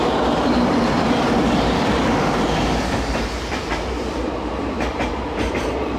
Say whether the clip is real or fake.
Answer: fake